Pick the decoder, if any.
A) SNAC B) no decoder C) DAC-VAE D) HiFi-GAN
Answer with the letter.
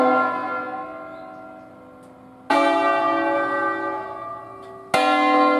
B